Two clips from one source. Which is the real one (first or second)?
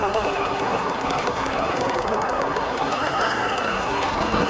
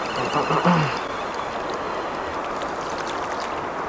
second